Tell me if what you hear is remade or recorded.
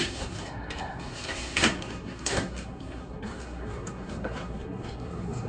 remade